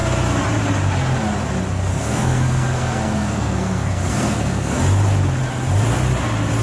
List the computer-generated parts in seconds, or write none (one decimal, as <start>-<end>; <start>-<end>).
1.9-4.8